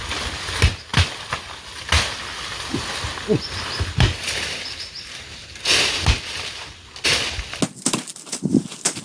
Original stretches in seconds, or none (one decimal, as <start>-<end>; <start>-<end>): 0.0-9.0